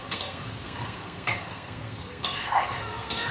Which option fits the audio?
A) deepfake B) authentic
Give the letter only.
A